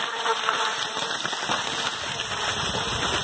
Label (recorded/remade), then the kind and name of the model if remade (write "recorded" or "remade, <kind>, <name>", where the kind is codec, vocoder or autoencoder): recorded